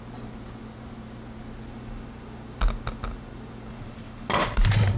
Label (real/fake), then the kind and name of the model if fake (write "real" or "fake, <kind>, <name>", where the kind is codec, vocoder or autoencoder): real